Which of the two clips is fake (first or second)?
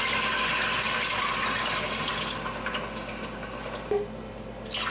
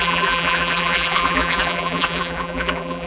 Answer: second